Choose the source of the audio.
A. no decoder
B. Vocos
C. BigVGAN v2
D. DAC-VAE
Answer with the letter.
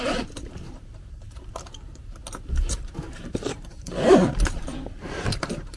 C